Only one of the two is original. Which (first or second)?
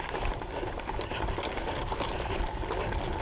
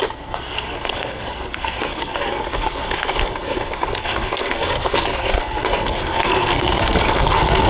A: first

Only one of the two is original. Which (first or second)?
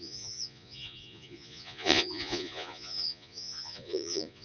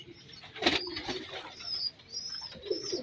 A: second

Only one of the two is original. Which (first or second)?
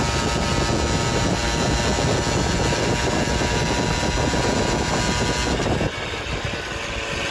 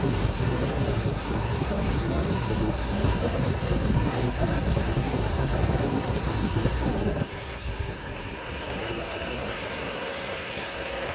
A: first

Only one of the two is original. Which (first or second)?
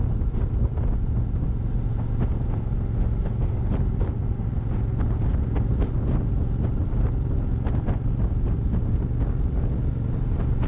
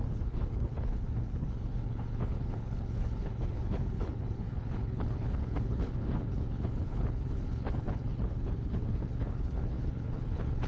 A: first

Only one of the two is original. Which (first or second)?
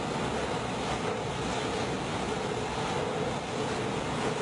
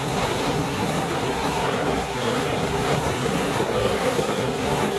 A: first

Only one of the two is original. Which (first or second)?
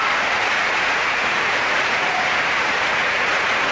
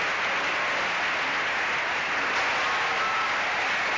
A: second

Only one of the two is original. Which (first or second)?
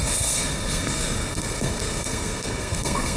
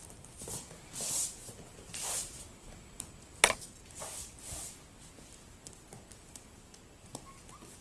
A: second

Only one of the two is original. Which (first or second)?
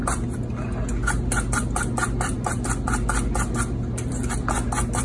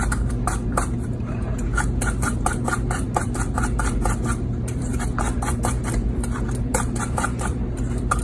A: first